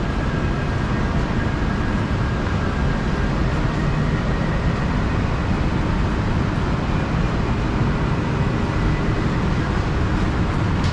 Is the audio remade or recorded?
recorded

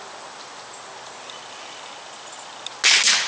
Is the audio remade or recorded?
recorded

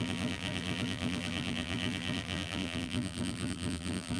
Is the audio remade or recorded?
remade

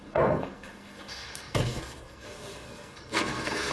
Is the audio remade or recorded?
remade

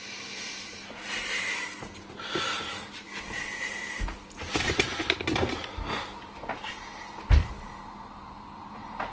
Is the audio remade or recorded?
recorded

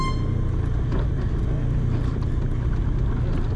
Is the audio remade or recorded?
recorded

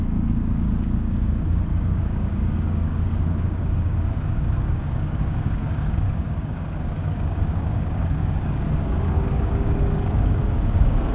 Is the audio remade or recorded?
remade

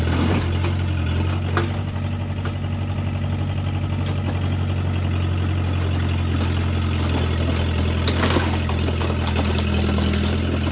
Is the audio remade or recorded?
recorded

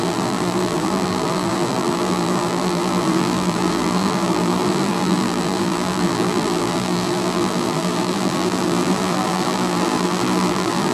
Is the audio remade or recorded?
remade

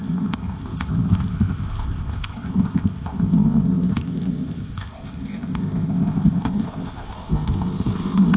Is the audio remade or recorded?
remade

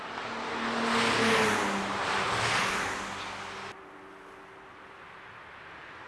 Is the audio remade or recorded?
recorded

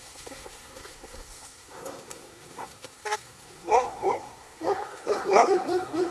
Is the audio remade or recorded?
remade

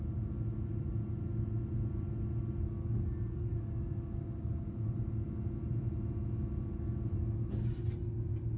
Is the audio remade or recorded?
recorded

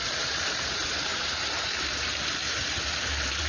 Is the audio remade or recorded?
remade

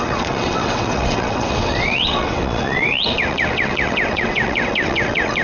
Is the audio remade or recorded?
remade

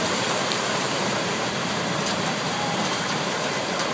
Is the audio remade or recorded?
remade